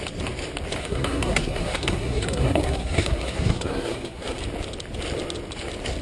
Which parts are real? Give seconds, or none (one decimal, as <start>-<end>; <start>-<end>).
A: 0.0-0.8; 4.4-6.0